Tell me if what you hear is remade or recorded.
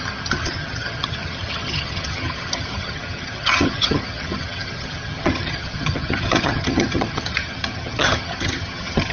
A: remade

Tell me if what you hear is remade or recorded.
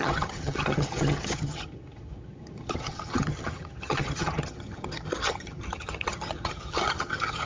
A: remade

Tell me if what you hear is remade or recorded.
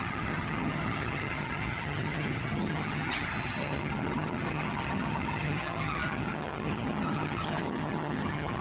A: remade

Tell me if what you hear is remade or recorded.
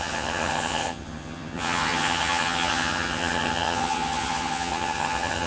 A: remade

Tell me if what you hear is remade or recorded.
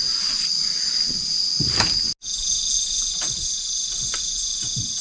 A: recorded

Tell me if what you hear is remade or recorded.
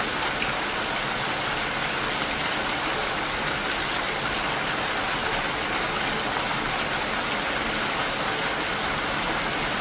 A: recorded